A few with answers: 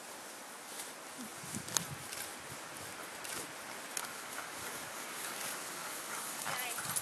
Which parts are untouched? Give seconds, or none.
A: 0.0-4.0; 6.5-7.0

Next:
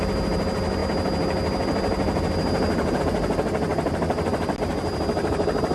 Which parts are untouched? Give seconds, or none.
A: 0.0-5.7

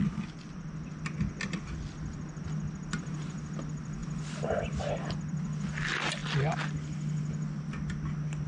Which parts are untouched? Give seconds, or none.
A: 0.0-8.5

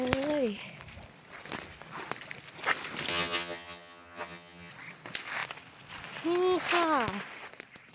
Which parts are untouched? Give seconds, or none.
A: 0.0-3.1; 4.7-7.9

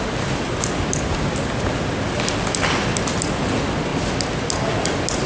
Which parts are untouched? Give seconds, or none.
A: 0.0-5.3

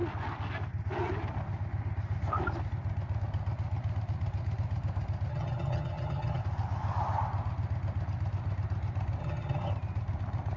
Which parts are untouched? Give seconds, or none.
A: 0.0-5.3; 6.4-9.2; 9.7-10.6

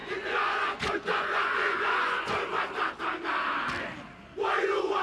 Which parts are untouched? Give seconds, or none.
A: 2.3-5.0

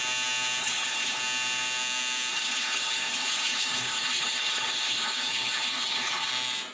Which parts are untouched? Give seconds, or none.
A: 0.0-0.6; 1.2-2.3; 6.3-6.7